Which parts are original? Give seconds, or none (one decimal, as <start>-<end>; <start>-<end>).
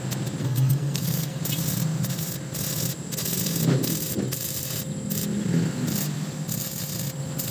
0.0-0.4; 1.4-7.5